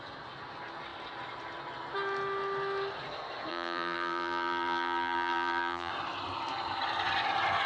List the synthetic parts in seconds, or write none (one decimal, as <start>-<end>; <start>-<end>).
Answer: 3.5-5.9